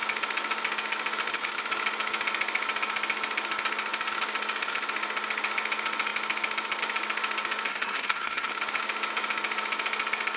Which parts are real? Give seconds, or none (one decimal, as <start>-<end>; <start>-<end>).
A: 0.0-7.7; 8.5-10.4